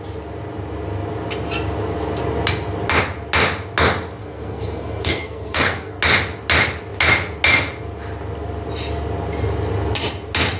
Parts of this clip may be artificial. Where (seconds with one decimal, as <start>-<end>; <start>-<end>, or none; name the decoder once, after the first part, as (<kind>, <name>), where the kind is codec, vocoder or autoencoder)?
4.2-6.0 (codec, SNAC)